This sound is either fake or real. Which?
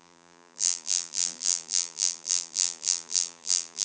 fake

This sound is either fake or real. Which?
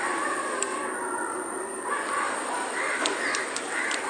real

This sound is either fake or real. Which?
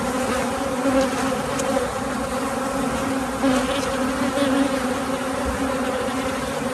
real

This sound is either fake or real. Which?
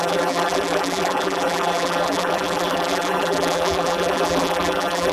fake